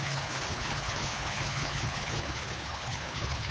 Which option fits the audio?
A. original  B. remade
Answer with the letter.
B